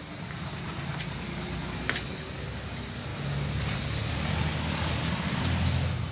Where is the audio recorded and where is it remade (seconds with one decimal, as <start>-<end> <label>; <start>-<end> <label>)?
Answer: 0.0-6.1 recorded